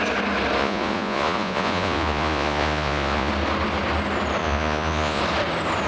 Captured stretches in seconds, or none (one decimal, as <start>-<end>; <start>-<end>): 0.0-0.6; 3.3-4.4; 5.2-5.9